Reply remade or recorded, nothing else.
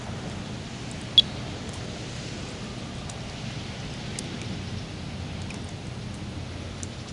recorded